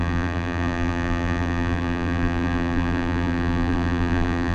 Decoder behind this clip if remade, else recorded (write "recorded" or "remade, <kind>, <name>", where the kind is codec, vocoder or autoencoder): remade, vocoder, BigVGAN v2